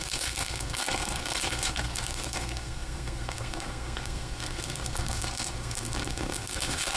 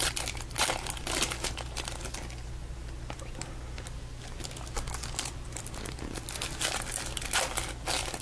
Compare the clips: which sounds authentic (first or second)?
second